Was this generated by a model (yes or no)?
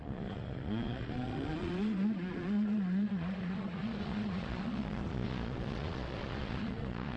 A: yes